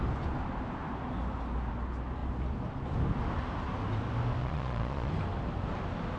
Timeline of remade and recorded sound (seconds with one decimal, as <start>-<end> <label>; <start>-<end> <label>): 0.0-4.4 recorded; 4.4-5.1 remade; 5.1-6.2 recorded